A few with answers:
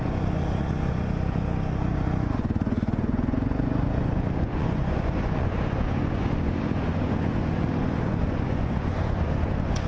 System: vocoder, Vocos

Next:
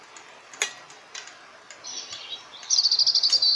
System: none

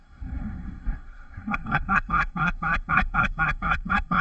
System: codec, SNAC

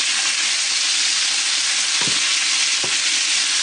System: none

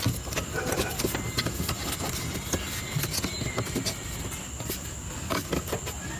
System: none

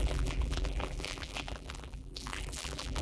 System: vocoder, BigVGAN v2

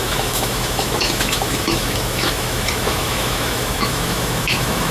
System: autoencoder, DAC-VAE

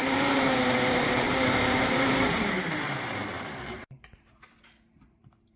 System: vocoder, BigVGAN v2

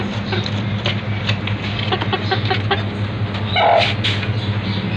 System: none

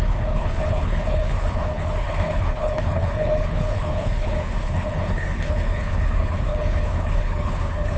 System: codec, HILCodec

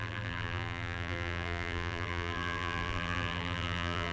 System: vocoder, BigVGAN v2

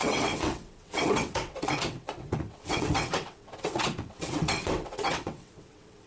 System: vocoder, WaveNeXt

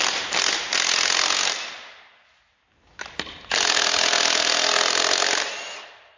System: none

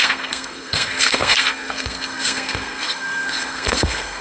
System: codec, SNAC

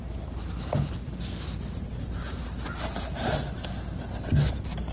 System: none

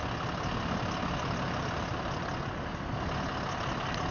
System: none